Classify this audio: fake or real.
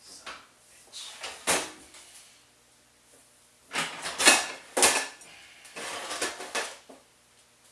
real